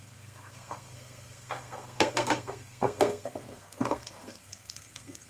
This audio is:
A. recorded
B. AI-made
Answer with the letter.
B